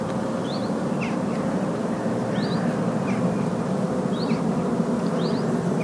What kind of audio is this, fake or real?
real